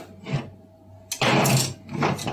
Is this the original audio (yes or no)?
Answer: yes